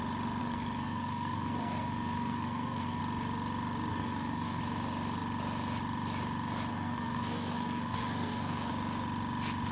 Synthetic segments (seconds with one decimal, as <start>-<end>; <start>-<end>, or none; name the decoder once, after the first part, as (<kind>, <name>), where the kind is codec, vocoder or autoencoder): 0.4-3.0 (codec, SNAC); 3.9-4.6; 6.7-8.7